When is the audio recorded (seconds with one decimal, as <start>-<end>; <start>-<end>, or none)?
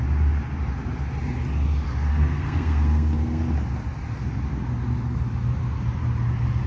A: 0.0-2.1; 3.4-6.7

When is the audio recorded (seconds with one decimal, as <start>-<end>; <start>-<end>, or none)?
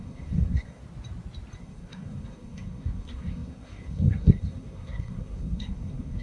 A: 0.8-1.6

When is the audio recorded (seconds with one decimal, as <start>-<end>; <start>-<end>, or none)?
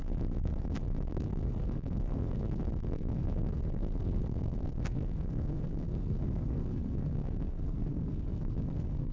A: none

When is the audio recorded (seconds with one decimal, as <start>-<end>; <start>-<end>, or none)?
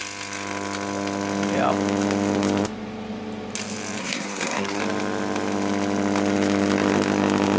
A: 0.0-4.0; 4.8-7.6